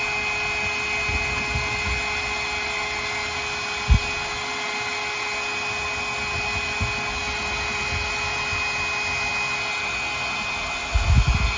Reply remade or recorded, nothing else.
recorded